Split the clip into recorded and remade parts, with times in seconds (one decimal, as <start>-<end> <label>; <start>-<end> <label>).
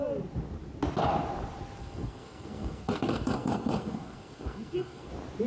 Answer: 0.0-1.8 recorded; 1.8-5.1 remade; 5.1-5.5 recorded